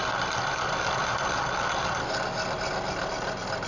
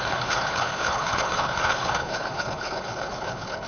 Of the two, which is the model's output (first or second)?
second